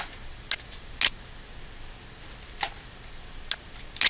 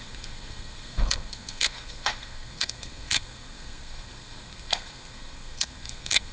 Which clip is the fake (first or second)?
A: second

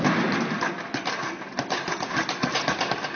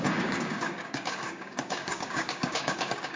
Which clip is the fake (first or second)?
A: second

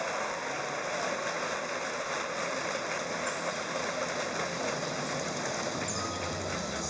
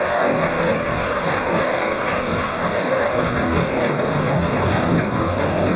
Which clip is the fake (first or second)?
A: second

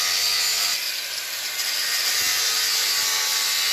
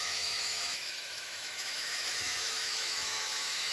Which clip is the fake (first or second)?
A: second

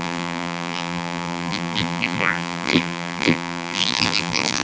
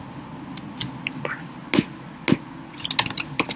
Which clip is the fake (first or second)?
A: first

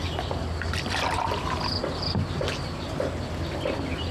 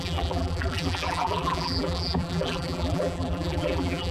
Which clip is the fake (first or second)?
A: second